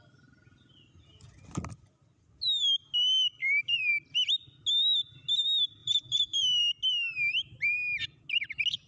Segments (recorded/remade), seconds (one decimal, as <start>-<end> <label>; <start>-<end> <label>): 0.0-3.4 recorded; 3.4-3.9 remade; 3.9-5.8 recorded; 5.8-6.6 remade; 6.6-8.9 recorded

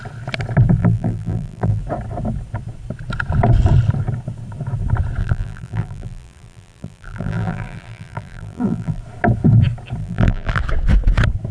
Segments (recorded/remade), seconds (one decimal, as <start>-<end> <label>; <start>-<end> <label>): 0.0-0.8 recorded; 0.8-1.8 remade; 1.8-5.2 recorded; 5.2-9.0 remade; 9.0-10.0 recorded; 10.0-10.6 remade; 10.6-11.5 recorded

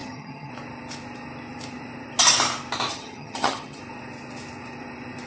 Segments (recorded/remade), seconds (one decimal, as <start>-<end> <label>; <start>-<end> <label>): 0.0-0.5 remade; 0.5-2.9 recorded; 2.9-3.8 remade; 3.8-5.3 recorded

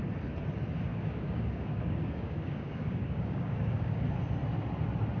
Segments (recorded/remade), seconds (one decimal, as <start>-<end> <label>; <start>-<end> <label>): 0.0-0.9 recorded; 0.9-4.0 remade; 4.0-5.2 recorded

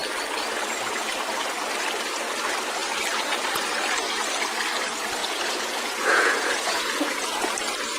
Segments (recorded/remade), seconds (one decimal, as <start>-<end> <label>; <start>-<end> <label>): 0.0-5.2 recorded; 5.2-7.5 remade; 7.5-8.0 recorded

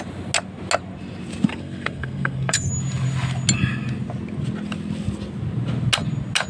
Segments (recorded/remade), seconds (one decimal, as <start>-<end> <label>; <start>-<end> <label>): 0.0-1.5 recorded; 1.5-2.7 remade; 2.7-6.5 recorded

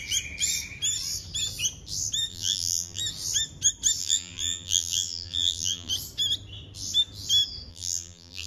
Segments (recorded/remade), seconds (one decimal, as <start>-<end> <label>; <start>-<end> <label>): 0.0-2.3 recorded; 2.3-3.0 remade; 3.0-4.0 recorded; 4.0-5.9 remade; 5.9-7.7 recorded; 7.7-8.5 remade

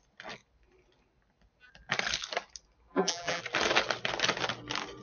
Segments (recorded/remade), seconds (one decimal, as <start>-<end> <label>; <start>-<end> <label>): 0.0-2.9 recorded; 2.9-3.4 remade; 3.4-5.0 recorded